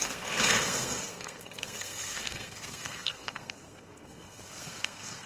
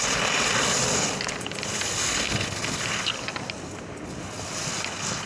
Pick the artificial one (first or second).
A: first